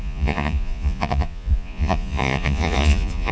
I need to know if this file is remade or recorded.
remade